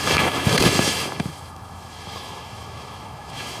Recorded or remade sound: remade